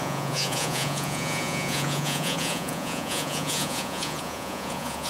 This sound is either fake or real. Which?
fake